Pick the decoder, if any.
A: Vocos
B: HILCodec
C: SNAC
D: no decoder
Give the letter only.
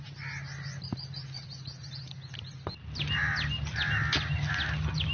D